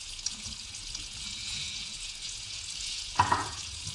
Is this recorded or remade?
remade